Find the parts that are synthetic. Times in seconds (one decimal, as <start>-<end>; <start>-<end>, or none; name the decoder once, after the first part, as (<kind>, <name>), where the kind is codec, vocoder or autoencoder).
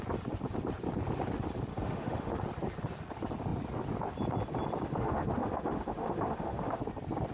1.7-2.3 (autoencoder, DAC-VAE); 4.9-6.8